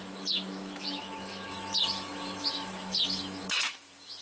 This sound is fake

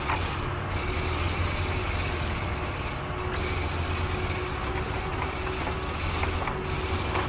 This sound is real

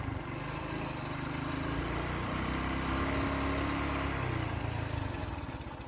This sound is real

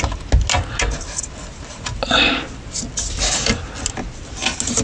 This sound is real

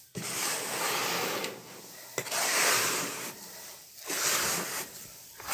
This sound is real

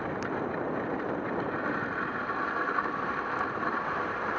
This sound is real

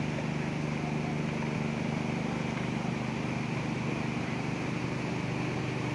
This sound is real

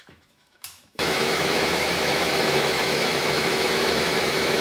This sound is fake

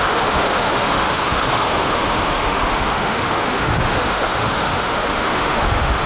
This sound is fake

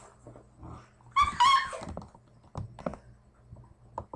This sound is real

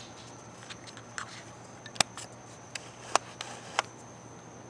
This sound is real